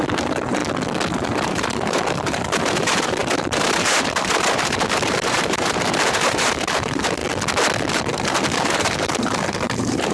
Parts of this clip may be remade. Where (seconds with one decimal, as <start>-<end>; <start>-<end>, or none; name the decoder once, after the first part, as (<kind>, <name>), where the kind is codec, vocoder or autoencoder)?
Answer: 0.0-0.6 (vocoder, BigVGAN v2); 1.1-7.2; 7.9-10.1